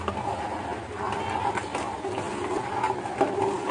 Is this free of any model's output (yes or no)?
yes